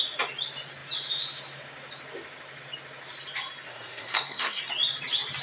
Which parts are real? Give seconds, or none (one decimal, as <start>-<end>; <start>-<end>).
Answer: 0.0-3.7; 4.6-5.4

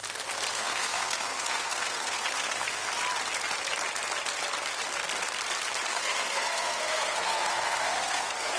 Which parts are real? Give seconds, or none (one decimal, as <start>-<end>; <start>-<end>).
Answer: 0.0-0.5; 2.9-5.9

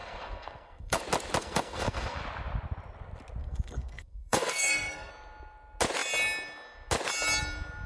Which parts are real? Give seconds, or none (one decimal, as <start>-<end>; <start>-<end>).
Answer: 1.0-1.4; 2.2-3.4; 5.1-7.9